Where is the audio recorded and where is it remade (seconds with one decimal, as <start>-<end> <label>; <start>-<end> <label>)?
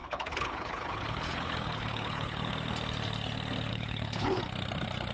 0.0-2.5 remade; 2.5-3.7 recorded; 3.7-4.4 remade; 4.4-5.1 recorded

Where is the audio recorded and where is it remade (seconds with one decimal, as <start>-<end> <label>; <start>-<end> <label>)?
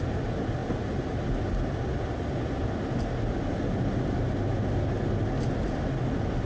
0.0-6.5 recorded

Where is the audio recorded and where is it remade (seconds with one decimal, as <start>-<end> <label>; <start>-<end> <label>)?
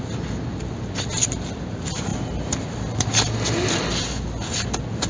0.0-5.1 recorded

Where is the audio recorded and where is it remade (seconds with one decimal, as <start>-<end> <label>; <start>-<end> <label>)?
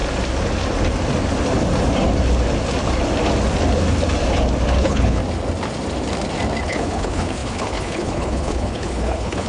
0.0-4.8 recorded; 4.8-5.2 remade; 5.2-6.6 recorded; 6.6-9.5 remade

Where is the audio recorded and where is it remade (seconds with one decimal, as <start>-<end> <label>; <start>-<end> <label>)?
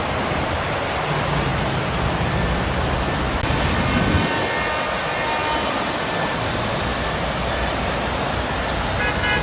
0.0-9.4 recorded